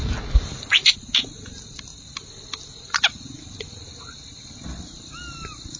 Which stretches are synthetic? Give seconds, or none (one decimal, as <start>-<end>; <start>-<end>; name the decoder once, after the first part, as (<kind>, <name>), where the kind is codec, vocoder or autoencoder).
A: none